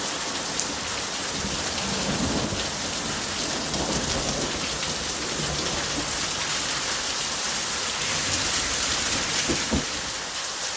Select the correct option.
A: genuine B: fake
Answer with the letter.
A